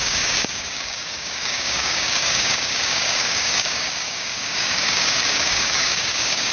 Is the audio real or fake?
fake